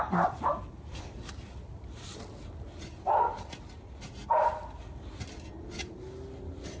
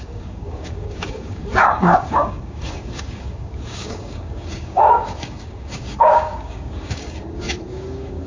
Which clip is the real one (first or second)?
first